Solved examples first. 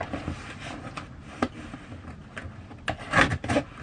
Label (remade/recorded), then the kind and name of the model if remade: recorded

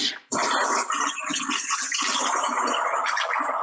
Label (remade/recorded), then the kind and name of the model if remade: recorded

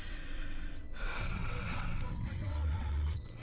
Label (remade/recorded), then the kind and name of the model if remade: remade, vocoder, WaveNeXt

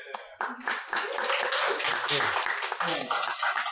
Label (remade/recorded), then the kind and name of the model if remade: recorded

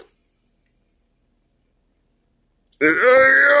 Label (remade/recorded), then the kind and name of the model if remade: recorded